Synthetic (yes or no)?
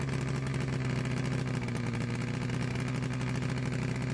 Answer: no